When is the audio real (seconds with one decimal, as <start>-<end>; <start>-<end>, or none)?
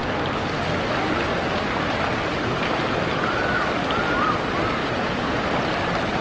0.0-4.8; 5.4-6.2